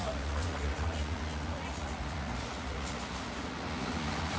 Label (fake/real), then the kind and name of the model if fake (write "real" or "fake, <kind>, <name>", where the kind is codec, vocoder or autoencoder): fake, vocoder, Vocos